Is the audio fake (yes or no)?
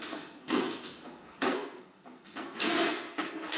yes